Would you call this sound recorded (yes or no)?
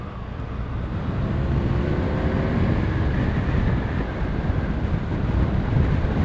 yes